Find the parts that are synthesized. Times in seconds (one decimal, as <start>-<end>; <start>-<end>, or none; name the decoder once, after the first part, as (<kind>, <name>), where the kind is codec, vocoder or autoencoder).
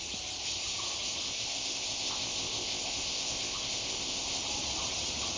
1.2-4.4 (codec, ZipCodec)